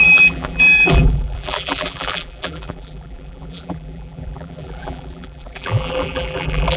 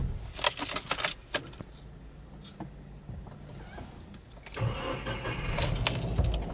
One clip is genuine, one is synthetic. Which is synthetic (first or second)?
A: first